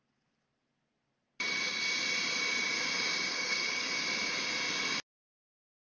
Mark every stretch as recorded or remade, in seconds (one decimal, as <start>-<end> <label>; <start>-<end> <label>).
0.0-3.3 recorded; 3.3-3.9 remade; 3.9-6.0 recorded